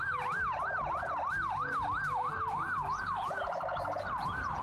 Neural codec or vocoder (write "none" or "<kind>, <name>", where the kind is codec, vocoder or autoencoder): none